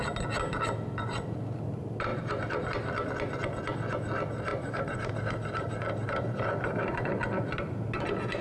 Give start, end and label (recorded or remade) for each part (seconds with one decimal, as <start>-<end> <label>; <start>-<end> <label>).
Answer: 0.0-2.1 recorded; 2.1-2.7 remade; 2.7-4.5 recorded; 4.5-7.1 remade; 7.1-8.4 recorded